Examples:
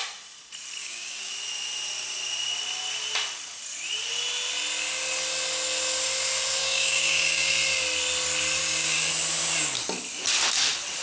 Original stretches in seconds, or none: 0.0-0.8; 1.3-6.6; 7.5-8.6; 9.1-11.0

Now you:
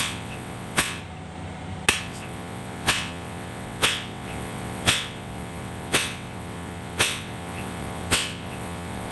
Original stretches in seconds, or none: 1.0-2.0

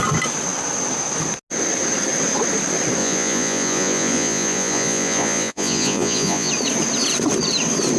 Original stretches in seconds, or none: 0.0-3.0; 6.5-8.0

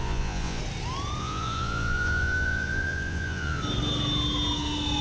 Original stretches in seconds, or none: 0.6-1.2; 3.6-5.0

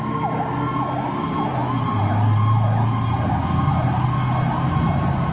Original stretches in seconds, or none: 0.0-5.3

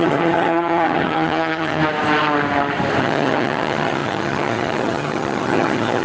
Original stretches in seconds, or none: 1.8-3.0